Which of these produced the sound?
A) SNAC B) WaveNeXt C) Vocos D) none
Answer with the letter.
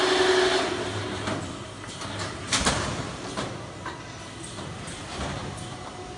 D